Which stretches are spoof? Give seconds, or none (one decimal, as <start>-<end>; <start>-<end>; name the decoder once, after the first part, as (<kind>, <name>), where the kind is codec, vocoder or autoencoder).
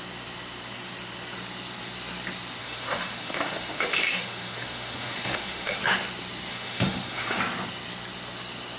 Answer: 2.6-5.8 (autoencoder, DAC-VAE); 6.5-7.4